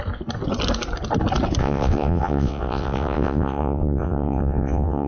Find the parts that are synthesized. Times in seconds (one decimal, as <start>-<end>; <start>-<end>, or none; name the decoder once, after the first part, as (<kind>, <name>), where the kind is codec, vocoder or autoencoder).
1.6-5.1 (vocoder, WaveNeXt)